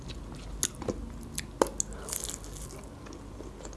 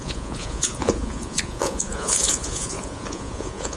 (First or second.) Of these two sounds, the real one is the first